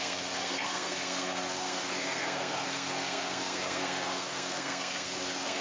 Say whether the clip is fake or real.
fake